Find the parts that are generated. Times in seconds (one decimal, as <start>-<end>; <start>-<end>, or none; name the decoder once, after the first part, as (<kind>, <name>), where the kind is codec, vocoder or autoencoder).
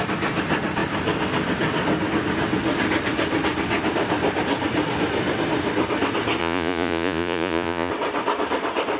6.4-7.9 (vocoder, Vocos)